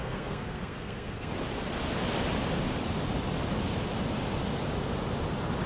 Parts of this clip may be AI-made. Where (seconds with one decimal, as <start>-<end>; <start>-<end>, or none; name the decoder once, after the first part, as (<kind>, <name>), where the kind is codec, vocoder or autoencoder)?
0.0-1.3 (codec, SNAC)